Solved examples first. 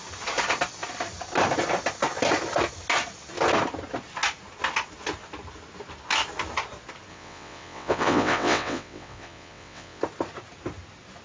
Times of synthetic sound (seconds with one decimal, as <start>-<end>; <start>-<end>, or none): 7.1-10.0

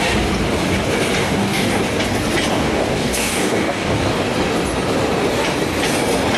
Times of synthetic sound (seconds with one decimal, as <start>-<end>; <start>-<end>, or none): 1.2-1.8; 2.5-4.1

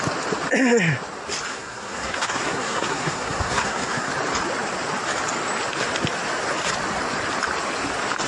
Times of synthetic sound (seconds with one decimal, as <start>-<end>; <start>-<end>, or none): 1.5-4.1